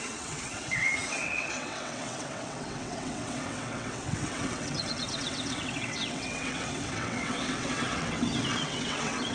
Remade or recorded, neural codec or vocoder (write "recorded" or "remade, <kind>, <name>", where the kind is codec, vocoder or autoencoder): remade, vocoder, WaveNeXt